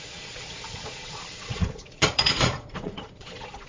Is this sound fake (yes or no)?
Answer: yes